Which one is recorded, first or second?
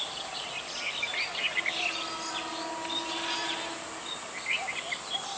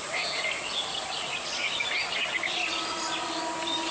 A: first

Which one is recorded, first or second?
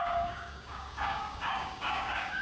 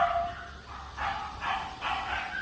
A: second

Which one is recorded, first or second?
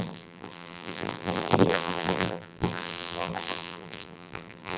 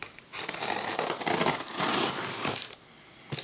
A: second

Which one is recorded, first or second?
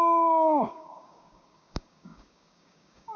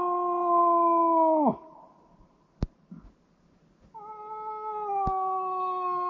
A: second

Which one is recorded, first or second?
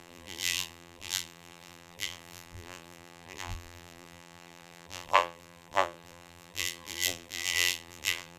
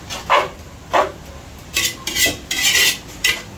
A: second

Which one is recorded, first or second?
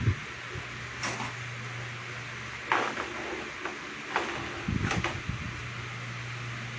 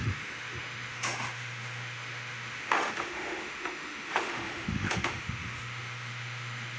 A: first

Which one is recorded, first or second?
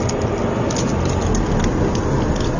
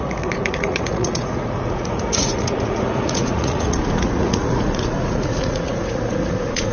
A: first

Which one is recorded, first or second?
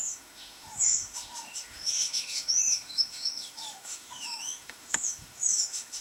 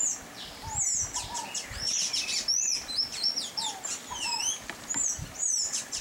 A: second